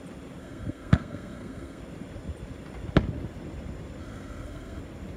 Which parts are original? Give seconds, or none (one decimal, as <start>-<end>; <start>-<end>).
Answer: 0.0-0.4; 1.8-4.0; 4.8-5.2